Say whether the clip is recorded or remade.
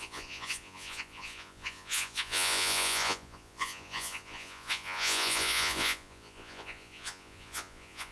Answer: remade